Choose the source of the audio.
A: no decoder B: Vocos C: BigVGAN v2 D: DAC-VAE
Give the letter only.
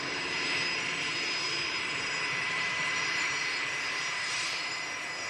C